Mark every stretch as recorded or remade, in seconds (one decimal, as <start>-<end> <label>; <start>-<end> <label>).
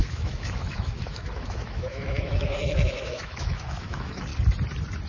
0.0-4.3 remade; 4.3-5.1 recorded